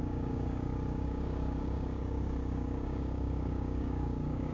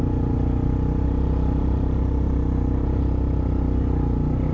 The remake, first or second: first